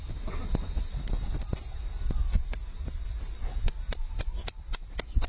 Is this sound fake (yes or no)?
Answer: no